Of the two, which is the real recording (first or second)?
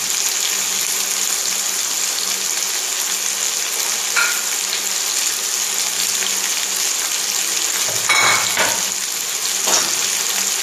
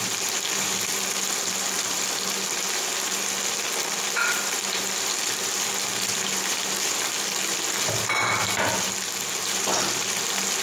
first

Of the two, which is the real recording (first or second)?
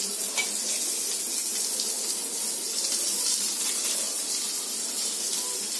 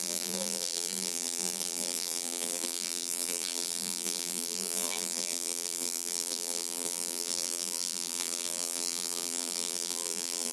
first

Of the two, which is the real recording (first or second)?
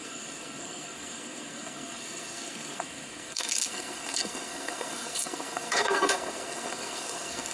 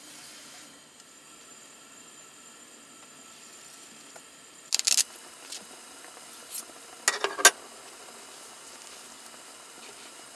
second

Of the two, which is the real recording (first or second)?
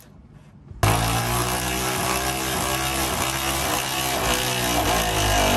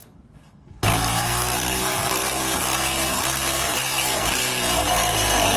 first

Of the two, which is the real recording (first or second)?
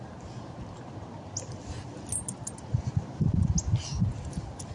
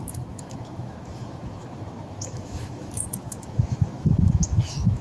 first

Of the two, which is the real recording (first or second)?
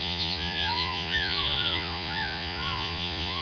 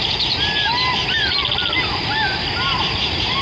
second